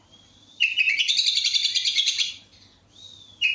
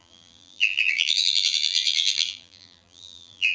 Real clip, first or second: first